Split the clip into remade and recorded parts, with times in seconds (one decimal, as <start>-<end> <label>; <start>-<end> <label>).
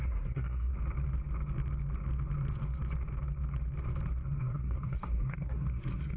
0.0-0.7 remade; 0.7-4.4 recorded; 4.4-6.2 remade